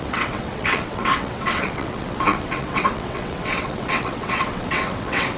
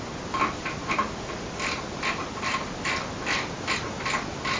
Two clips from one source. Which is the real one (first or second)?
second